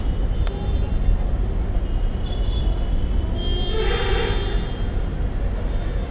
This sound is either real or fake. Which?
real